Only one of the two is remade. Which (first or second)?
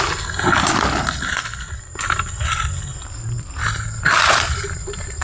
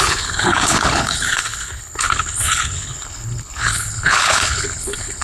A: second